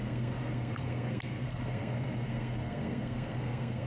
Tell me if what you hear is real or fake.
fake